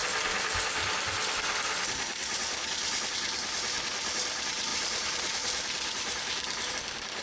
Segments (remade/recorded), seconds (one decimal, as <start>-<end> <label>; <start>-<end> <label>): 0.0-4.7 recorded; 4.7-6.7 remade; 6.7-7.2 recorded